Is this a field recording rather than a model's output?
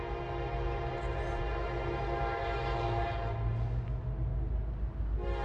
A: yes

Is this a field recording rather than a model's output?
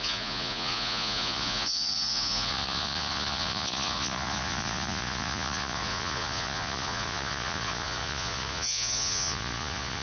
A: no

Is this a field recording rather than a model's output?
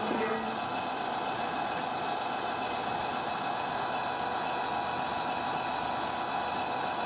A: yes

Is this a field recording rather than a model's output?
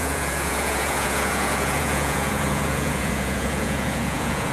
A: no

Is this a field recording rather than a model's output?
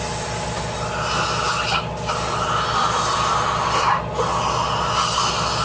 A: yes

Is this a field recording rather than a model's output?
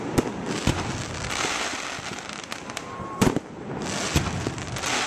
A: yes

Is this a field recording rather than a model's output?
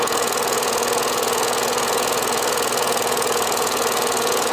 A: no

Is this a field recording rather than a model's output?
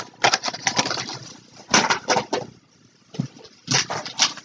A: yes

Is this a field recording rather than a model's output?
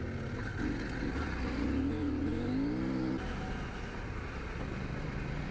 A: yes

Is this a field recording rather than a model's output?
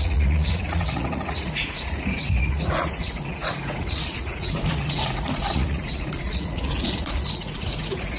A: no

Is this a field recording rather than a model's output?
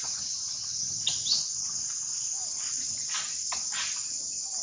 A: yes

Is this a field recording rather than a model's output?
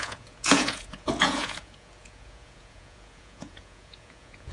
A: no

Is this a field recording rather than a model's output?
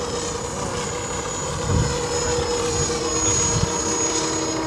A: yes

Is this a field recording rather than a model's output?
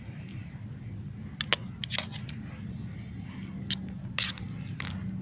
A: yes